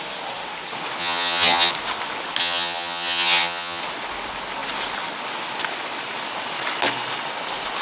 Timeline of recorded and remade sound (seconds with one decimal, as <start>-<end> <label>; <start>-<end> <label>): 0.0-1.0 recorded; 1.0-1.7 remade; 1.7-2.4 recorded; 2.4-3.8 remade; 3.8-7.8 recorded